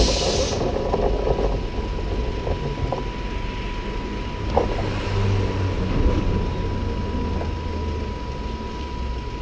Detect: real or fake real